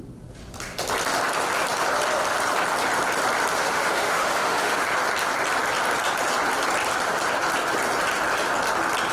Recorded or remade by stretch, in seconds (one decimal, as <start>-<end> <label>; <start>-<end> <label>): 0.0-3.5 recorded; 3.5-4.8 remade; 4.8-9.1 recorded